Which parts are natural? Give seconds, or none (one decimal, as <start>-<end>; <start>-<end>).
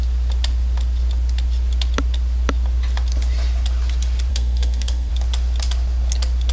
0.0-4.3; 5.1-6.5